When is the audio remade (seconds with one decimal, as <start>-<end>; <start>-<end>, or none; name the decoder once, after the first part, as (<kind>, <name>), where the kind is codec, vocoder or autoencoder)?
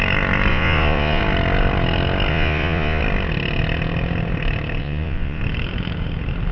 0.5-1.2 (vocoder, Vocos); 2.3-3.0; 4.8-5.4